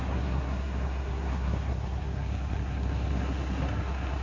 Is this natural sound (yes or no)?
no